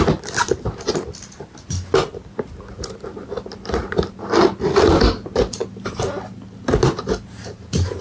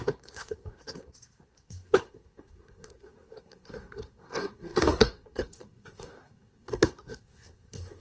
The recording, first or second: first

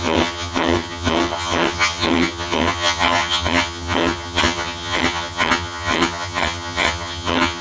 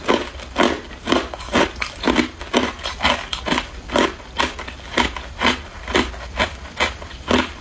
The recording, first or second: second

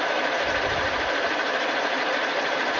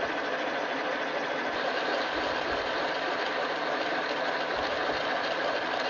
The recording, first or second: second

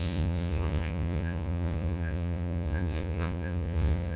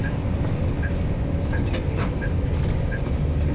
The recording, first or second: second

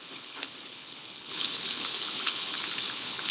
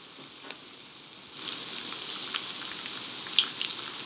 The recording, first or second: second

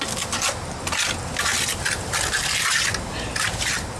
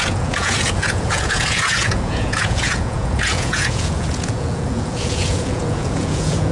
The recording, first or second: first